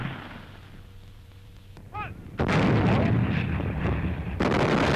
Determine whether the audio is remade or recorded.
remade